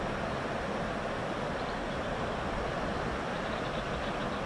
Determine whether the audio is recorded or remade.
recorded